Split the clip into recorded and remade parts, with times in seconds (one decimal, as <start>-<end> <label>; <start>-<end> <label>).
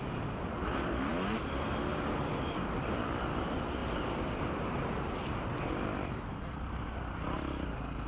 0.0-8.1 recorded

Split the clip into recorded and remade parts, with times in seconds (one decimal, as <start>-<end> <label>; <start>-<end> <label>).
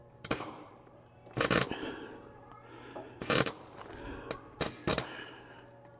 0.0-3.6 remade; 3.6-4.9 recorded; 4.9-5.4 remade; 5.4-6.0 recorded